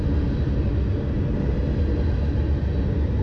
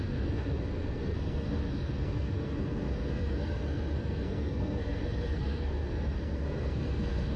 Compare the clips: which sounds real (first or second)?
first